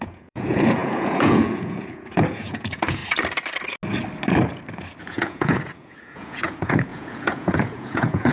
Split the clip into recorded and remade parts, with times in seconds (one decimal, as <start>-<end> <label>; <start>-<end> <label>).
0.0-3.0 remade; 3.0-5.0 recorded; 5.0-8.3 remade